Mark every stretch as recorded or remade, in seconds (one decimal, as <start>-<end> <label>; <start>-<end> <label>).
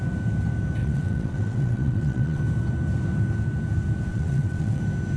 0.0-0.8 recorded; 0.8-2.4 remade; 2.4-4.1 recorded; 4.1-4.8 remade; 4.8-5.2 recorded